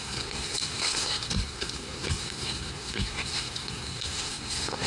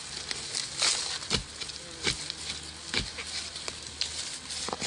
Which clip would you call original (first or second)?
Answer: second